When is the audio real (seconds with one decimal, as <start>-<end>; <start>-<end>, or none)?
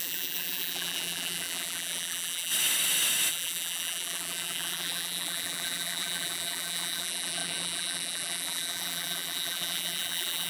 2.5-3.3